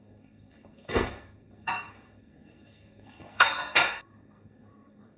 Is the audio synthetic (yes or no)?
yes